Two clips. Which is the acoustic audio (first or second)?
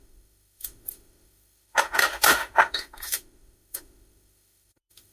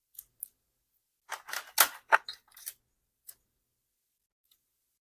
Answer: second